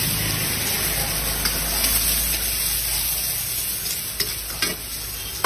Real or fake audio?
real